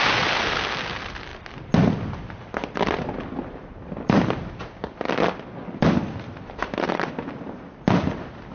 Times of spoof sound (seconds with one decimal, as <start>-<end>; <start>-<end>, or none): none